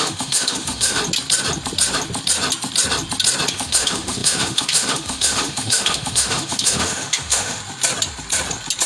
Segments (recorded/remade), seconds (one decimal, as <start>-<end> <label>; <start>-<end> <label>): 0.0-1.0 remade; 1.0-3.5 recorded; 3.5-7.6 remade; 7.6-8.9 recorded